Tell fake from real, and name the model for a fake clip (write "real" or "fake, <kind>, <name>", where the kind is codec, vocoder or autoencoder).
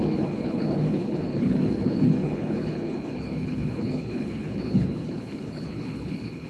fake, codec, HILCodec